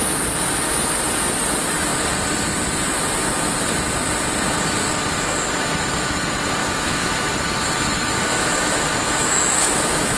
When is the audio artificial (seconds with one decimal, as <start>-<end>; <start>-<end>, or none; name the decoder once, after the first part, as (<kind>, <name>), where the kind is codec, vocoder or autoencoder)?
6.6-7.1 (autoencoder, DAC-VAE); 8.3-10.2

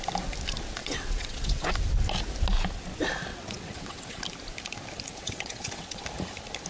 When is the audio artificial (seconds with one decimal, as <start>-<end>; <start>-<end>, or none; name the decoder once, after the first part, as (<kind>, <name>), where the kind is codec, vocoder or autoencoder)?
0.8-1.7 (vocoder, WaveNeXt); 3.3-4.2; 5.1-6.0

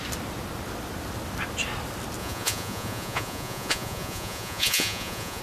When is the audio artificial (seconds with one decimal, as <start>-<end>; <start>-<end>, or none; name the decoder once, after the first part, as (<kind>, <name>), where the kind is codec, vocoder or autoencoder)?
2.2-5.4 (vocoder, Vocos)

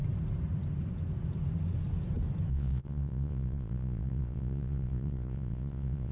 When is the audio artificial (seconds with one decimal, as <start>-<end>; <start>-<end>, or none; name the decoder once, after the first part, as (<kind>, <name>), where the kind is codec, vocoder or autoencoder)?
2.5-6.1 (vocoder, Vocos)

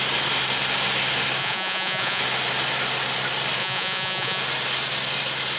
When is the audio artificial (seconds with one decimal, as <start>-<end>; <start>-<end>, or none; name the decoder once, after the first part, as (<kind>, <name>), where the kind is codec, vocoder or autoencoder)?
1.4-2.2 (vocoder, Vocos); 3.6-4.4